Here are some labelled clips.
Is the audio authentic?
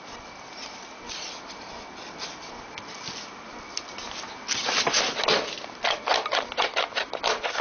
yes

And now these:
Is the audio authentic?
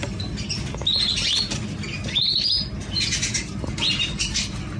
yes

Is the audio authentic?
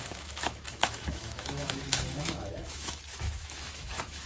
no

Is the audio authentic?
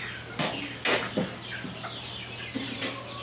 yes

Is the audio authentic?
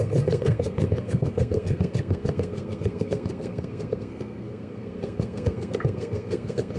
no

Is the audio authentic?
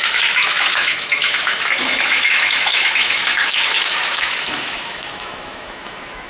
no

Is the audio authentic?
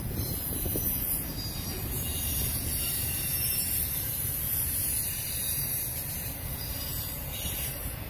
no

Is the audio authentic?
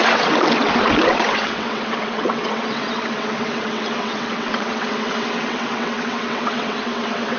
no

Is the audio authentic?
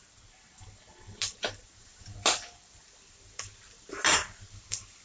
yes